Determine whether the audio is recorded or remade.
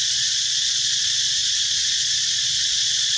remade